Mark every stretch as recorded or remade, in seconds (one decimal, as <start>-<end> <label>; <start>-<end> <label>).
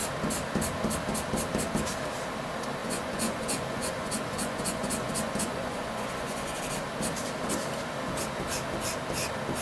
0.0-2.8 recorded; 2.8-6.6 remade; 6.6-9.6 recorded